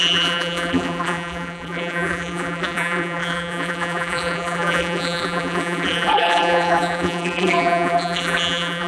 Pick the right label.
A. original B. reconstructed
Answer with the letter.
B